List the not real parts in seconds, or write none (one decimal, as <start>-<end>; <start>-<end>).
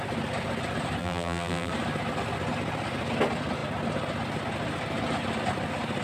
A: 1.0-1.7